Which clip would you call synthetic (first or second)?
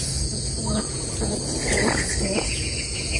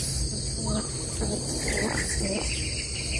first